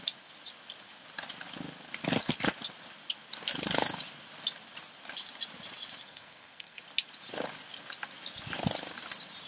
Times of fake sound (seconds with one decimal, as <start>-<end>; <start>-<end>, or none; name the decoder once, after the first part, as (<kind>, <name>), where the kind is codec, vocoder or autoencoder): 6.0-6.8 (codec, SNAC)